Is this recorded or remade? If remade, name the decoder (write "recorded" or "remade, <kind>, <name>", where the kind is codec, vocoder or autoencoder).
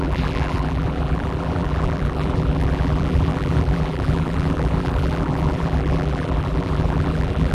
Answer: remade, vocoder, BigVGAN v2